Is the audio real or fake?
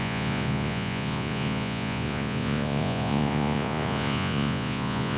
fake